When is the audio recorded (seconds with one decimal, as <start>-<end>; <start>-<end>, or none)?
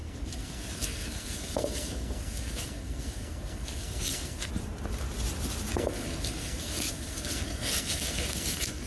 4.5-5.7